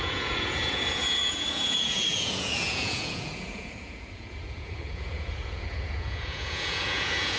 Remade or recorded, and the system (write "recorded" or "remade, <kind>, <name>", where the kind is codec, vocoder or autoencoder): remade, vocoder, Vocos